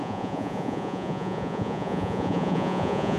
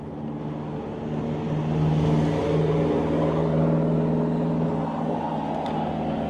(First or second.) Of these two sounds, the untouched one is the second